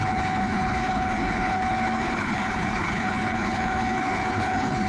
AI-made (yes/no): yes